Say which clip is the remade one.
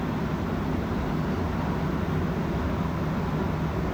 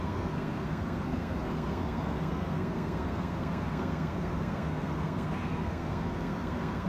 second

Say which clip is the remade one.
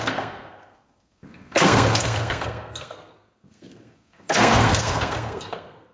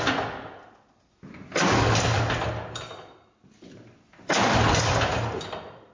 first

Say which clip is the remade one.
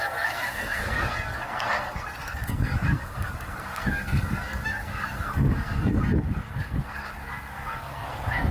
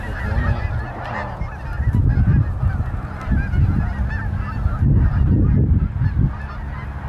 first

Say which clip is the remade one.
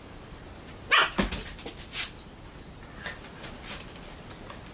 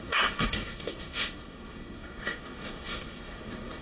second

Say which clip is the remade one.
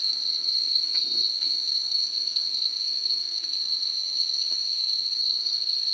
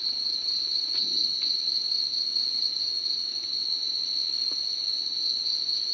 first